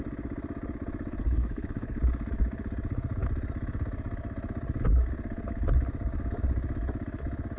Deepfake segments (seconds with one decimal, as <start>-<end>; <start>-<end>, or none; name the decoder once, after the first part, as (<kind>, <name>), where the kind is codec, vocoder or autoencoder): 1.2-2.0 (codec, HILCodec)